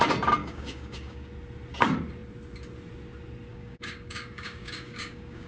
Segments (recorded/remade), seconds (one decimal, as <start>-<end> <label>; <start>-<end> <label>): 0.0-0.4 recorded; 0.4-1.3 remade; 1.3-3.5 recorded; 3.5-5.5 remade